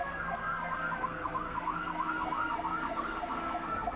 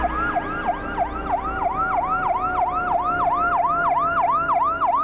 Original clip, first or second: second